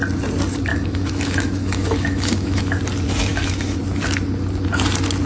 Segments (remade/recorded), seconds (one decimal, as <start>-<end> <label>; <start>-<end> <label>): 0.0-0.7 recorded; 0.7-2.8 remade; 2.8-3.3 recorded; 3.3-3.8 remade; 3.8-5.3 recorded